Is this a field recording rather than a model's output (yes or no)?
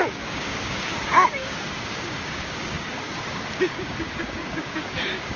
no